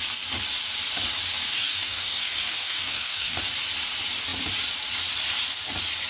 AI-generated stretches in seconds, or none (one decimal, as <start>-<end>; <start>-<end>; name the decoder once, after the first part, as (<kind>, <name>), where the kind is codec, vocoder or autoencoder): 1.5-3.4 (codec, DAC)